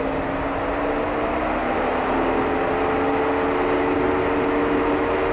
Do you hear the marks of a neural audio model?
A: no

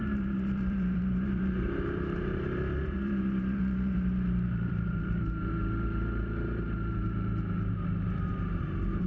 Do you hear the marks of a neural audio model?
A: yes